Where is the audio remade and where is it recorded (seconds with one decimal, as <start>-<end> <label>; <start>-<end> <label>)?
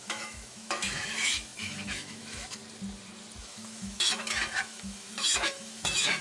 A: 0.0-2.6 remade; 2.6-3.4 recorded; 3.4-6.2 remade